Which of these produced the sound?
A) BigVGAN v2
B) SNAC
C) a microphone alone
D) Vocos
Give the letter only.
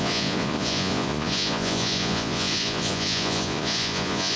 D